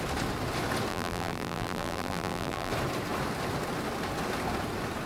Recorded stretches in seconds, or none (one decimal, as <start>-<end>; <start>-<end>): 0.0-0.9; 2.7-5.1